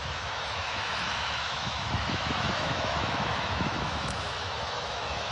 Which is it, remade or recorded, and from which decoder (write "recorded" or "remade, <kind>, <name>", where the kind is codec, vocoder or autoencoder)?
remade, autoencoder, DAC-VAE